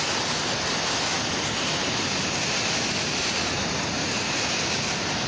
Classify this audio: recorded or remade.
recorded